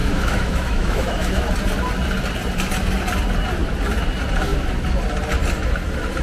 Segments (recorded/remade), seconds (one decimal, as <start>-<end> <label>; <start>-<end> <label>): 0.0-1.5 remade; 1.5-6.2 recorded